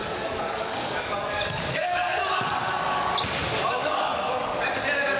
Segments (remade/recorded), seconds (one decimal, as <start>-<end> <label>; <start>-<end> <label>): 0.0-3.1 remade; 3.1-3.8 recorded; 3.8-4.7 remade; 4.7-5.2 recorded